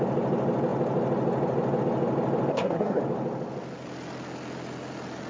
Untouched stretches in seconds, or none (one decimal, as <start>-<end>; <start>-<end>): 0.0-2.5; 3.0-5.3